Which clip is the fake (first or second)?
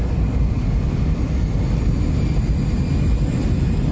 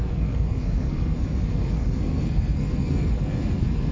second